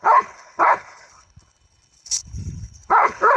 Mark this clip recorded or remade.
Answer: remade